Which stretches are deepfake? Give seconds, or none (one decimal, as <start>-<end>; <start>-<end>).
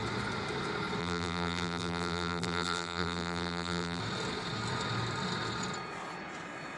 1.0-4.0